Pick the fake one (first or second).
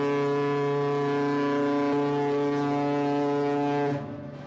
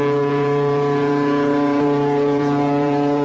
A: second